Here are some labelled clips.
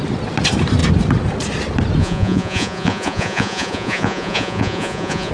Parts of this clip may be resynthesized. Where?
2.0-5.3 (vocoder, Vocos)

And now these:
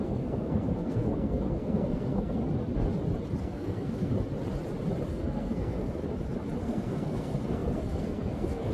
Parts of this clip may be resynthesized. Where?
0.0-2.4 (codec, SNAC); 3.4-4.1; 5.1-6.0; 6.6-8.7

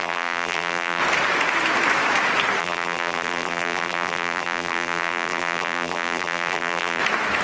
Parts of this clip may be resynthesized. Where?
0.0-1.0 (vocoder, BigVGAN v2); 2.6-7.0